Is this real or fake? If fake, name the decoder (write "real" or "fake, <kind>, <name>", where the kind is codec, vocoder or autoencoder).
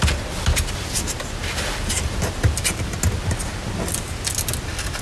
real